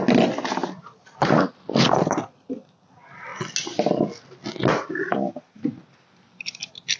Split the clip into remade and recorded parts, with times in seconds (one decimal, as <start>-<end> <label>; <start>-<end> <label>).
0.0-0.6 recorded; 0.6-1.6 remade; 1.6-7.0 recorded